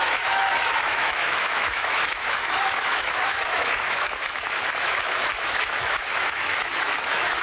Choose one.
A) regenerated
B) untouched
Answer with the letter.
A